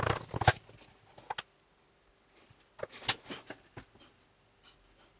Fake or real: real